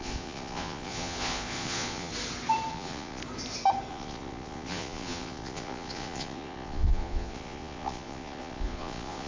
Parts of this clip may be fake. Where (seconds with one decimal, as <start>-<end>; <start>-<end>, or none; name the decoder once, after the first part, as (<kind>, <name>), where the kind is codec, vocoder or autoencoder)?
0.0-2.1 (vocoder, Vocos); 2.7-3.2; 3.9-9.3